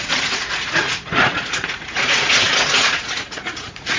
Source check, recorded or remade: remade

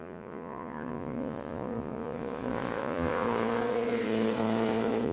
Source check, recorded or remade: remade